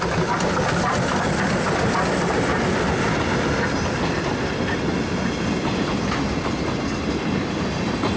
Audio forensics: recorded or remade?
recorded